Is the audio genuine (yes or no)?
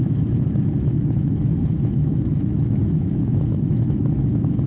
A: no